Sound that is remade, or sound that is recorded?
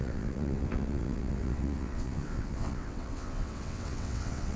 remade